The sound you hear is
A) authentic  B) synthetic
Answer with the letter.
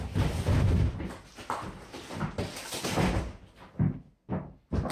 A